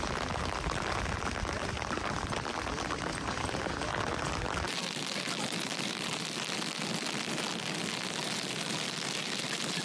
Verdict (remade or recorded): recorded